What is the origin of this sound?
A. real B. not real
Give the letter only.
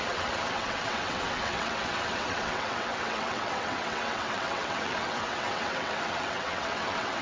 B